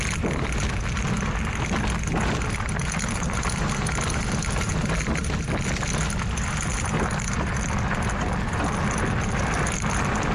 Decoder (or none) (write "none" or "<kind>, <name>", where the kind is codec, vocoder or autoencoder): none